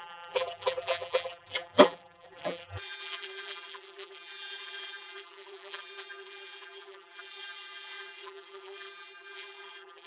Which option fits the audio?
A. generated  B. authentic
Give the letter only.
A